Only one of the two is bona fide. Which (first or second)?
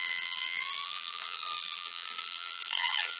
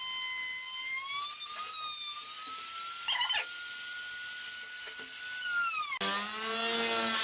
second